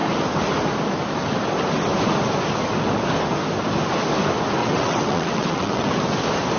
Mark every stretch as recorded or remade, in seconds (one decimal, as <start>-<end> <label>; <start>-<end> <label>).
0.0-4.6 recorded; 4.6-5.9 remade; 5.9-6.6 recorded